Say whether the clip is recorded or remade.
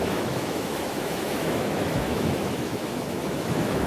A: remade